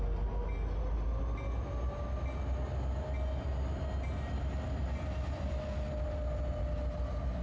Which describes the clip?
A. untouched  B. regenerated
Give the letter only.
A